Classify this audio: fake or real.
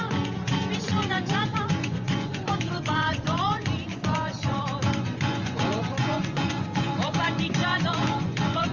fake